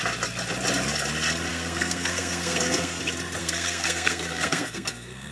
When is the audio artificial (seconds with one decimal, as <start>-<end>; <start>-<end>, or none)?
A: 1.5-3.0; 3.4-5.3